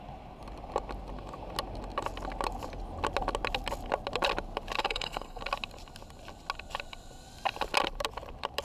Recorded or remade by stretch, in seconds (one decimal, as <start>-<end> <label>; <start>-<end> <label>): 0.0-4.8 recorded; 4.8-5.4 remade; 5.4-8.6 recorded